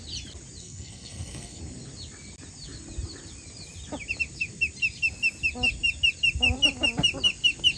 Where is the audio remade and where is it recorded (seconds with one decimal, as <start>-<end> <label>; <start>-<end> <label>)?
0.0-0.6 recorded; 0.6-1.6 remade; 1.6-7.8 recorded